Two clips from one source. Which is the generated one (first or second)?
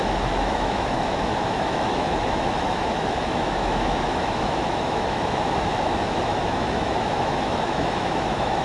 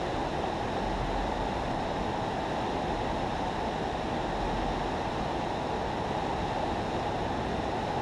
first